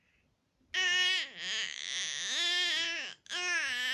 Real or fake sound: real